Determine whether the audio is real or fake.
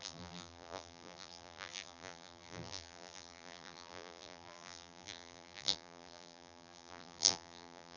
fake